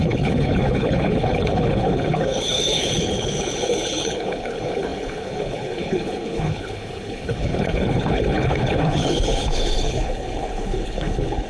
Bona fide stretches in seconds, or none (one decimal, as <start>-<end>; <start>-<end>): none